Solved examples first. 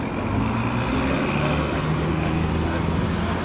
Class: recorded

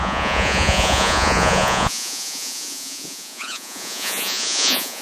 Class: remade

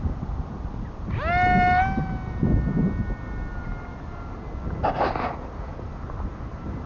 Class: recorded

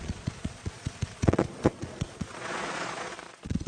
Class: remade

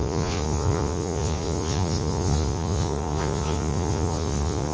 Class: remade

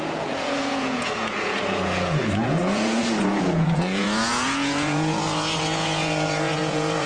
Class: remade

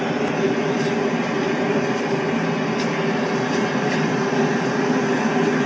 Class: recorded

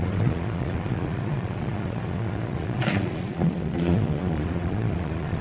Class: remade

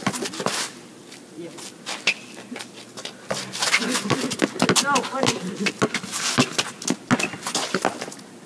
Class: recorded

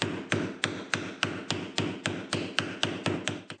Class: recorded